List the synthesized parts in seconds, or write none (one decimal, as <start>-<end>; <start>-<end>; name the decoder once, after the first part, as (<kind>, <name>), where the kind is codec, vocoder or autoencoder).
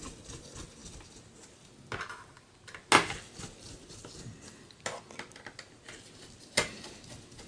none